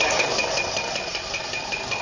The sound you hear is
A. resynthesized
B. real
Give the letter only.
B